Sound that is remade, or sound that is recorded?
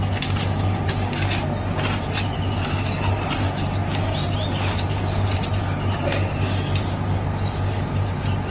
remade